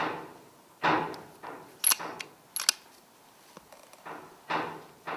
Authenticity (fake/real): real